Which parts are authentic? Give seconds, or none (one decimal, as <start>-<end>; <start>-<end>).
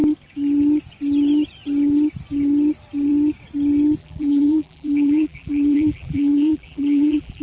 0.0-4.0